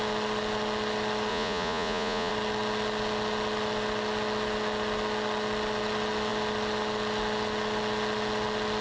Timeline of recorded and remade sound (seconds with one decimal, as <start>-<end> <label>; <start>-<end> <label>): 0.0-1.3 recorded; 1.3-2.3 remade; 2.3-8.8 recorded